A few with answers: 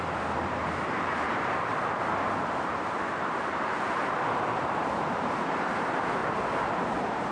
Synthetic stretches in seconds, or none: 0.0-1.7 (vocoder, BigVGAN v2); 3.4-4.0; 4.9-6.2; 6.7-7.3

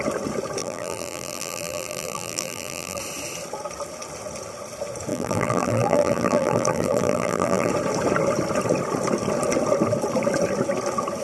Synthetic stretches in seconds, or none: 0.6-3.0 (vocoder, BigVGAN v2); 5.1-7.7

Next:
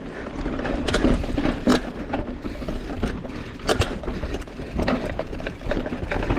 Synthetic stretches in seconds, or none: 0.0-1.7 (vocoder, BigVGAN v2); 2.9-6.4

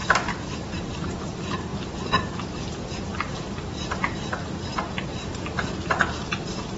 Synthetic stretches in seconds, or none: 0.0-1.2 (vocoder, BigVGAN v2); 1.7-2.2; 3.1-4.6; 5.1-5.9